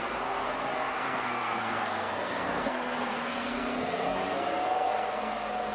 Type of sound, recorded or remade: remade